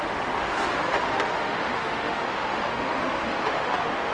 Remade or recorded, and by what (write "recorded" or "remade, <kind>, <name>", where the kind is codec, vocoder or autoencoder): remade, autoencoder, DAC-VAE